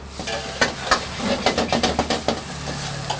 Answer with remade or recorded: recorded